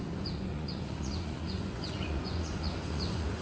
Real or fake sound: fake